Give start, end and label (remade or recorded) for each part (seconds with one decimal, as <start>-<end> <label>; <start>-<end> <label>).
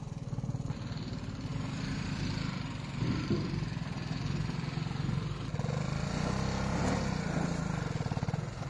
0.0-1.5 recorded; 1.5-4.2 remade; 4.2-8.7 recorded